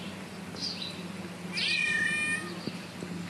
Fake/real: real